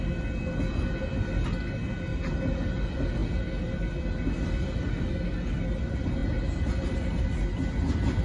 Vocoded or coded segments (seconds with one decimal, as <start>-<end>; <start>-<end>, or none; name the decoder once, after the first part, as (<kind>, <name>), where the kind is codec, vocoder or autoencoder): none